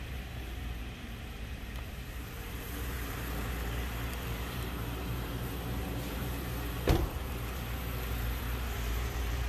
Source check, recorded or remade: remade